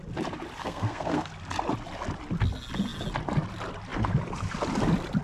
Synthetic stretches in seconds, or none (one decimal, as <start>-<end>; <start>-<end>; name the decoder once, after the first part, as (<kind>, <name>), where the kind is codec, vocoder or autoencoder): 0.6-1.3 (codec, SNAC)